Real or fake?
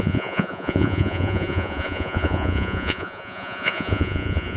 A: fake